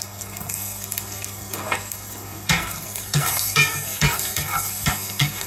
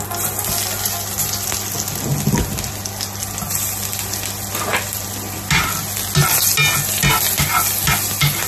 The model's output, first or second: first